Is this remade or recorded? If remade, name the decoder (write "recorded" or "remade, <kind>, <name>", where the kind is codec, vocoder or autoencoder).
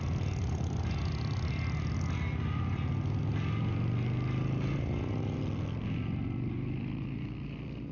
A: recorded